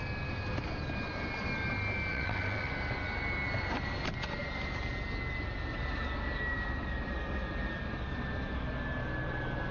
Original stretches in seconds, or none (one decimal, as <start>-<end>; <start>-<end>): 0.0-2.1; 2.7-9.7